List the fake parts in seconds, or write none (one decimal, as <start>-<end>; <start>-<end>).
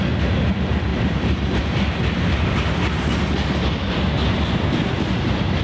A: 0.9-1.6